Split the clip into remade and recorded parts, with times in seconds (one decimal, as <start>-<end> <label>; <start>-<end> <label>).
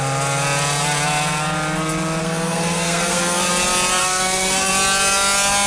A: 0.0-2.2 recorded; 2.2-3.5 remade; 3.5-4.0 recorded; 4.0-4.7 remade; 4.7-5.7 recorded